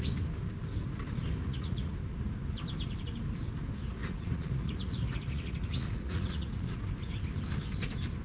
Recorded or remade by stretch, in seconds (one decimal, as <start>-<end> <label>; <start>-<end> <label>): 0.0-1.4 recorded; 1.4-1.9 remade; 1.9-4.0 recorded; 4.0-6.8 remade; 6.8-8.2 recorded